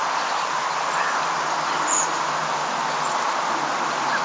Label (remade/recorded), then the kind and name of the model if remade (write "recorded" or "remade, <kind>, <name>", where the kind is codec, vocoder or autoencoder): recorded